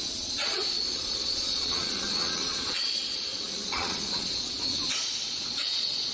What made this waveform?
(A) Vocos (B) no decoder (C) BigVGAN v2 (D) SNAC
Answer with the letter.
A